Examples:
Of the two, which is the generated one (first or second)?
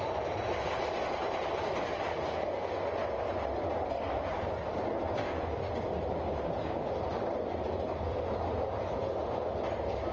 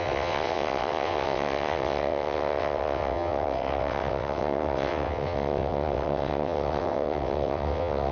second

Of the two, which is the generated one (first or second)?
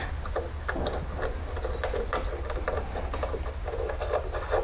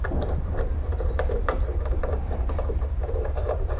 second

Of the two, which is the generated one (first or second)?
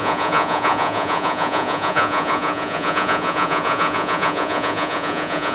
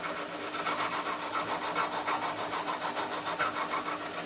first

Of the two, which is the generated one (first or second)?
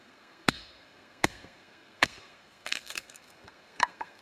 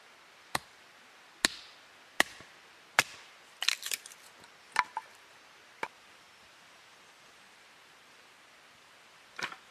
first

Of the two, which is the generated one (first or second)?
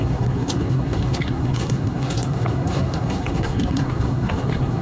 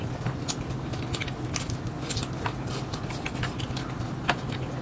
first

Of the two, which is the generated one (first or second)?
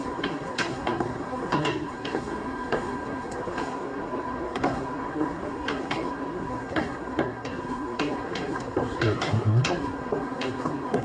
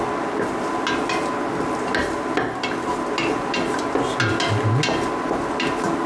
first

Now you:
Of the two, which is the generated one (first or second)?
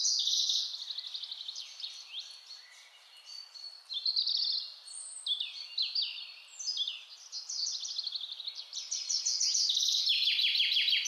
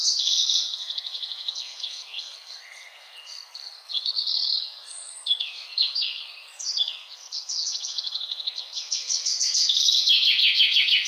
second